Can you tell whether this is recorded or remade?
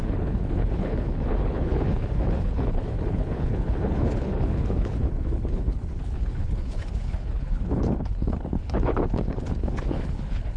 remade